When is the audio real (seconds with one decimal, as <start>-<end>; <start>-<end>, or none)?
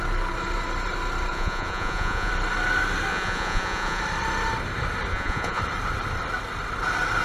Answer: 0.0-1.3; 2.3-3.1; 4.0-5.1; 5.6-7.2